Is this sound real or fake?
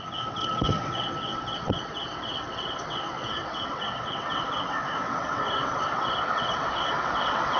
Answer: fake